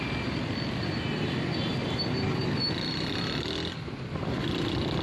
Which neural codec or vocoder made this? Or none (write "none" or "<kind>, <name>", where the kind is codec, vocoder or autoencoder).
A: none